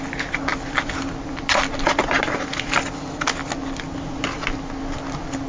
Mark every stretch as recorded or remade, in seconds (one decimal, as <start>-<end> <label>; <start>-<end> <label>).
0.0-5.5 recorded